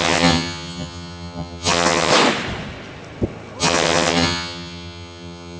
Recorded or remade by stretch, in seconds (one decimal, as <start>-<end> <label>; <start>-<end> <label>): 0.0-2.1 remade; 2.1-3.6 recorded; 3.6-5.6 remade